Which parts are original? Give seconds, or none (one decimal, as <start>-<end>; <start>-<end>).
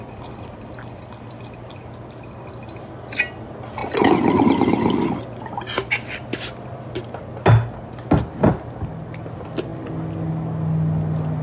0.0-11.4